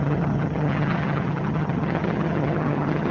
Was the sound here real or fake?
fake